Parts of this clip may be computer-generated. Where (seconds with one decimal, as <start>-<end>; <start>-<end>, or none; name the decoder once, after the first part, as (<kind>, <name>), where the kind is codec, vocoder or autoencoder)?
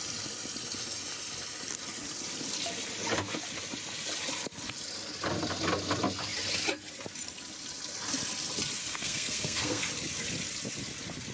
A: 8.8-9.9 (codec, SNAC)